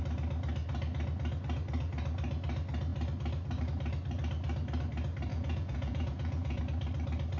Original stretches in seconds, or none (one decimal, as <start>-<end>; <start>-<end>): 0.0-5.3; 6.6-7.4